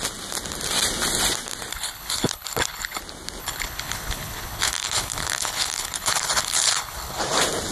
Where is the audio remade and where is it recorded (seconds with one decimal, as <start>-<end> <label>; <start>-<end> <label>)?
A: 0.0-1.7 recorded; 1.7-3.0 remade; 3.0-3.4 recorded; 3.4-7.2 remade; 7.2-7.7 recorded